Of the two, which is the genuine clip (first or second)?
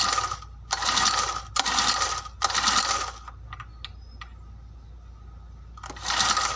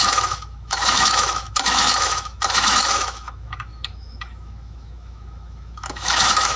first